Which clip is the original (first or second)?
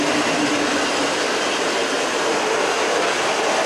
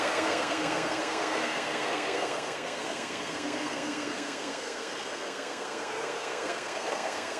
first